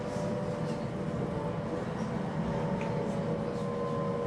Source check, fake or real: real